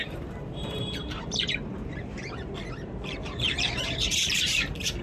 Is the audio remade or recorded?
remade